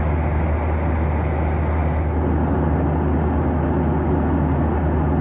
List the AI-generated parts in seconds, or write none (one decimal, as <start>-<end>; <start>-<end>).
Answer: none